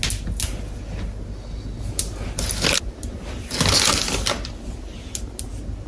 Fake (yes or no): no